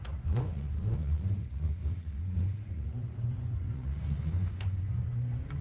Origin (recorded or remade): remade